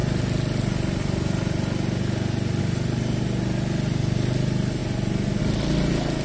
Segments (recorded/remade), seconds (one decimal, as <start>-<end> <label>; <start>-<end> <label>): 0.0-6.2 recorded